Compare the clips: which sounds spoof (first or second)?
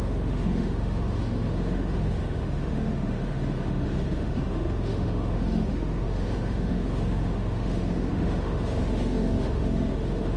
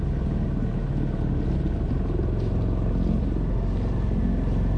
first